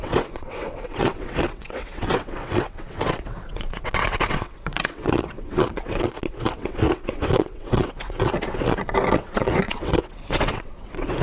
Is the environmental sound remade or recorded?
remade